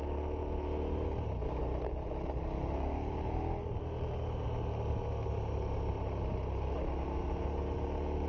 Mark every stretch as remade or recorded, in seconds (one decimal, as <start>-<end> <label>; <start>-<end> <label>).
0.0-8.3 recorded